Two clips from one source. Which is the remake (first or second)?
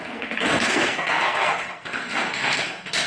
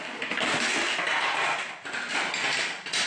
first